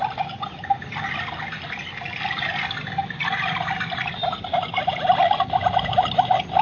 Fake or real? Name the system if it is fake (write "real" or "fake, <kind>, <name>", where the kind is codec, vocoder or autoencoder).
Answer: real